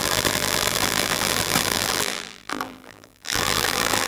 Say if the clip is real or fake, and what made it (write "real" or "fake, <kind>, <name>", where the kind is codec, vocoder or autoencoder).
fake, vocoder, BigVGAN v2